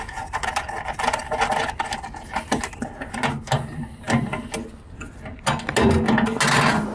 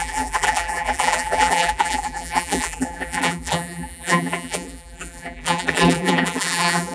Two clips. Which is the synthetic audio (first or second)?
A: second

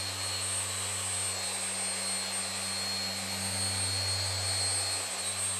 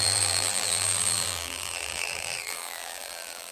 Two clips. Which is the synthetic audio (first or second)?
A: second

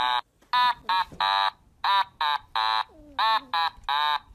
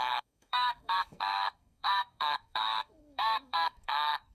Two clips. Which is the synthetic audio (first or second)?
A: second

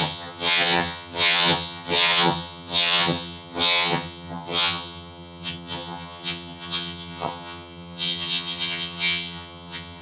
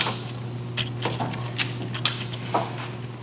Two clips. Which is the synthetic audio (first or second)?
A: first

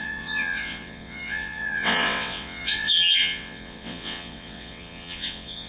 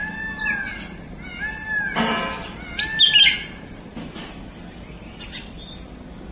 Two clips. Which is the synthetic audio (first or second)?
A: first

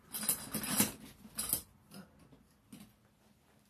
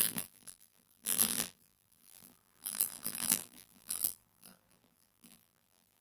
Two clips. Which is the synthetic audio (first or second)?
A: second